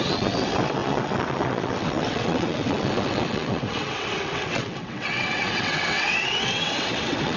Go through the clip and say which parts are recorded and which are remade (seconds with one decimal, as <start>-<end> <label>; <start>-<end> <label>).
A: 0.0-7.4 remade